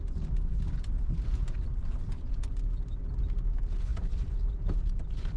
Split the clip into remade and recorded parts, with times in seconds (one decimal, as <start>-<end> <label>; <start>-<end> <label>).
0.0-5.4 recorded